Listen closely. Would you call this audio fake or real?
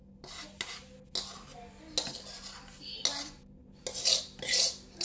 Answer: real